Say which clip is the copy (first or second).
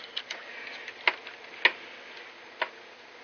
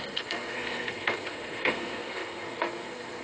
second